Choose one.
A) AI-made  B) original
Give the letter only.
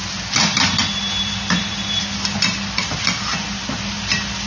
B